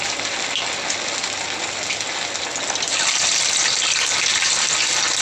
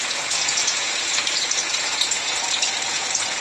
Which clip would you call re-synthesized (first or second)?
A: second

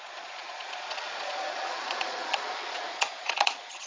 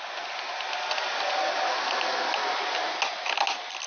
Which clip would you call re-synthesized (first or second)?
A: first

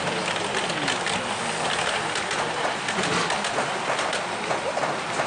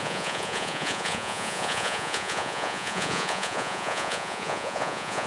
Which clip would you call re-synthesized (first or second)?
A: second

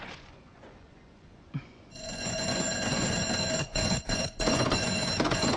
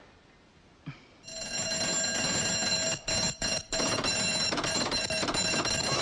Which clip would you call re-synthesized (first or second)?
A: first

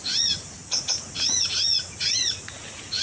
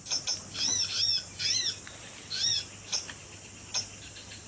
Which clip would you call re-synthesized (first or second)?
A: first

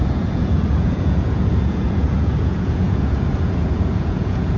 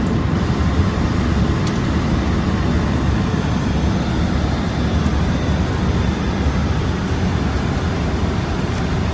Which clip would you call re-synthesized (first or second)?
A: first